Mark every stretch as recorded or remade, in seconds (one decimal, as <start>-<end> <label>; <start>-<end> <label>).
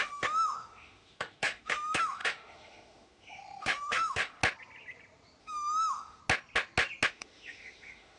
0.0-4.4 remade; 4.4-5.4 recorded; 5.4-6.2 remade; 6.2-7.1 recorded; 7.1-8.2 remade